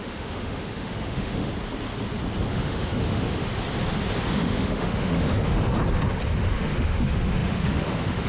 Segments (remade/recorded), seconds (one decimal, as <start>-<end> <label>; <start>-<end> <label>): 0.0-1.5 remade; 1.5-2.5 recorded; 2.5-3.5 remade; 3.5-4.2 recorded; 4.2-5.7 remade; 5.7-6.5 recorded; 6.5-8.3 remade